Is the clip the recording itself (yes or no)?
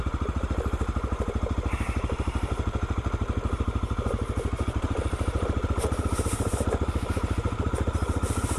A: no